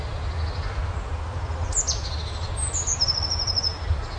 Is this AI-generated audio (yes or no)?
no